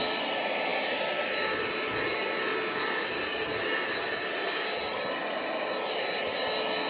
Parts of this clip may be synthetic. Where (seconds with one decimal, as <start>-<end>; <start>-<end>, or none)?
none